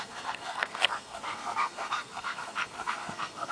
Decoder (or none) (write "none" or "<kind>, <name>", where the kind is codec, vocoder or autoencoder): codec, SNAC